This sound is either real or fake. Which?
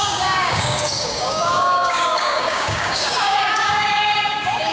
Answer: fake